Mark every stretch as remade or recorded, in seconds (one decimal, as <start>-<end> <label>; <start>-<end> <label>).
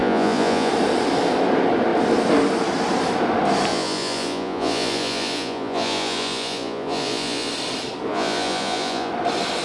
0.0-0.7 remade; 0.7-3.7 recorded; 3.7-7.5 remade; 7.5-8.1 recorded; 8.1-9.1 remade; 9.1-9.6 recorded